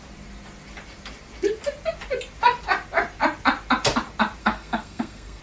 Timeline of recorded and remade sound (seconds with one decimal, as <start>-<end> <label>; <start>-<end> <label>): 0.0-4.4 recorded; 4.4-5.4 remade